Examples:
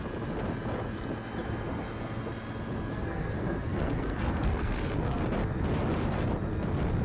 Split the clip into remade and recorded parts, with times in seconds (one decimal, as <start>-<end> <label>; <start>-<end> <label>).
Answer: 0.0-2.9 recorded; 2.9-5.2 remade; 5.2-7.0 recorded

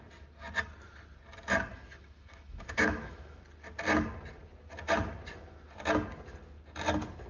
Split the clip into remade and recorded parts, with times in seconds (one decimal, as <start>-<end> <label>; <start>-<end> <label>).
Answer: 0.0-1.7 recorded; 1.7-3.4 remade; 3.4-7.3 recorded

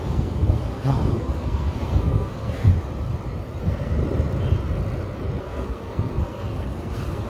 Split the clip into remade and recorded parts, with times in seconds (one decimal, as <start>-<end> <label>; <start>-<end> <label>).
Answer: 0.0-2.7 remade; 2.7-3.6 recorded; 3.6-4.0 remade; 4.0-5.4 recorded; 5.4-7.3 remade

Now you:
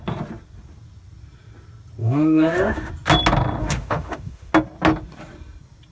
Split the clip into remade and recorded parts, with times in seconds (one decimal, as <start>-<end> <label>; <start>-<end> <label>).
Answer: 0.0-2.0 recorded; 2.0-2.9 remade; 2.9-3.6 recorded; 3.6-4.5 remade; 4.5-5.9 recorded

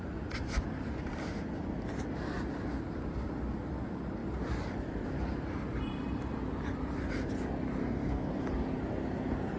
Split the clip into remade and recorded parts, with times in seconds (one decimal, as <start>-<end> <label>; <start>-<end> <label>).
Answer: 0.0-7.8 recorded; 7.8-8.3 remade; 8.3-9.6 recorded

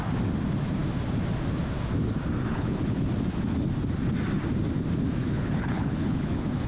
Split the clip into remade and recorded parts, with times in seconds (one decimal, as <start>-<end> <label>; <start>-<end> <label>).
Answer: 0.0-2.5 recorded; 2.5-3.1 remade; 3.1-5.2 recorded; 5.2-6.7 remade